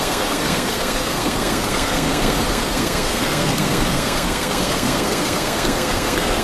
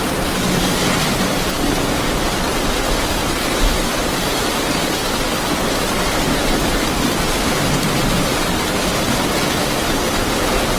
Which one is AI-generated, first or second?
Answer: first